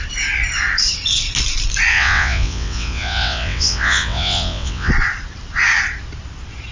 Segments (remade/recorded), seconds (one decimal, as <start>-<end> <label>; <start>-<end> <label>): 0.0-1.9 recorded; 1.9-4.9 remade; 4.9-6.7 recorded